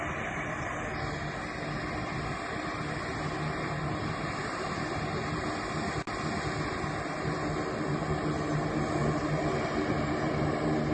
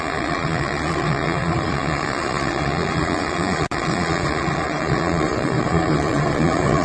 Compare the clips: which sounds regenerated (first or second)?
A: second